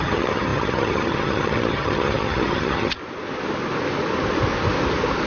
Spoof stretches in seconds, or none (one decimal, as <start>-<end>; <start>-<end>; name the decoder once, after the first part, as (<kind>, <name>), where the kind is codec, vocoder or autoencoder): 0.0-3.0 (vocoder, HiFi-GAN)